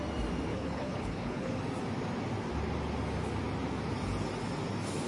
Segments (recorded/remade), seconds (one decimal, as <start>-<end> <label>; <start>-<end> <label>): 0.0-0.5 recorded; 0.5-1.6 remade; 1.6-5.1 recorded